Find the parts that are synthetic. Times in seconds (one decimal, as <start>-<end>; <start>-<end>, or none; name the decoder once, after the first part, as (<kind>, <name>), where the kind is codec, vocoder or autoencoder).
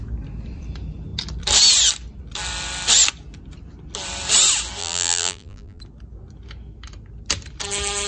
4.8-5.8 (vocoder, BigVGAN v2)